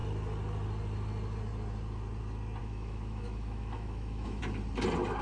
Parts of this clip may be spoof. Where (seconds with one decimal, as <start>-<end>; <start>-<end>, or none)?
2.6-4.4